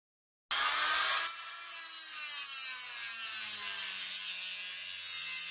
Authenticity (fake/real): real